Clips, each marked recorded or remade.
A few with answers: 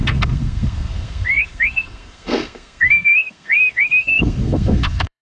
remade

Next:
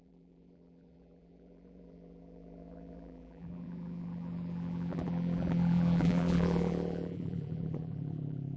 remade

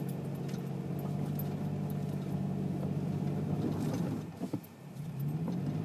recorded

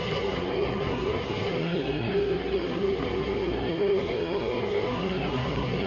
remade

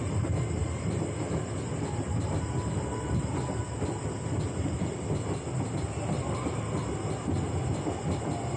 recorded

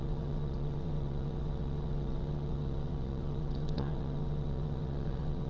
remade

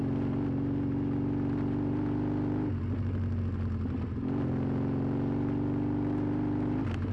recorded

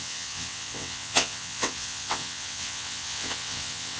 remade